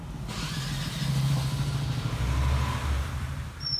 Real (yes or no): yes